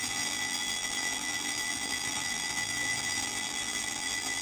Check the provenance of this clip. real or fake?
fake